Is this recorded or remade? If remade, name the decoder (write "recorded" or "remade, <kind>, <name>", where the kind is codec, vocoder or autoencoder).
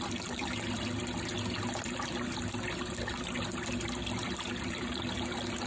recorded